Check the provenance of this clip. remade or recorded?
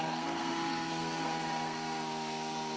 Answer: remade